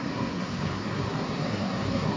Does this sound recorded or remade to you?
remade